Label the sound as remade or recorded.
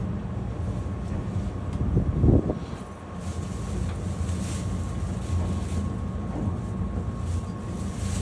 recorded